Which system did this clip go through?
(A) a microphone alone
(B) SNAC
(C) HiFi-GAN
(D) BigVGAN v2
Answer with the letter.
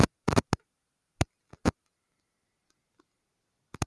A